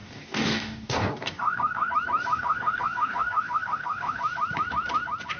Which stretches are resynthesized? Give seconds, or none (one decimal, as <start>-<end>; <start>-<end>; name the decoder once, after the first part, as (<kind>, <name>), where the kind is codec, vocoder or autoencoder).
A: 0.0-1.9 (codec, DAC); 2.3-4.2